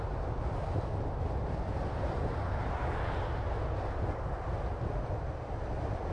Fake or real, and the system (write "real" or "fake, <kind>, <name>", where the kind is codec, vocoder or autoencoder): real